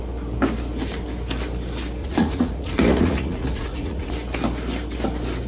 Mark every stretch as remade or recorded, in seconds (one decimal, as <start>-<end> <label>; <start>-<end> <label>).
0.0-2.0 recorded; 2.0-4.1 remade; 4.1-5.5 recorded